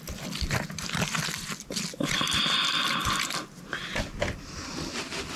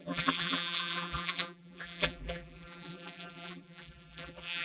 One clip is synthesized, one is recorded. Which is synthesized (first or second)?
second